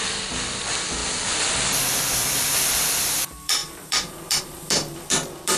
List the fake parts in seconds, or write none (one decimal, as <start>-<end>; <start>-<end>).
0.0-1.0; 2.1-5.6